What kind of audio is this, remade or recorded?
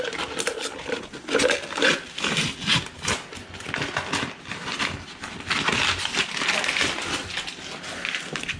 recorded